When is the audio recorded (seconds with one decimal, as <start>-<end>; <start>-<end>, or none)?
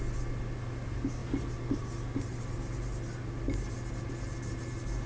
0.0-5.1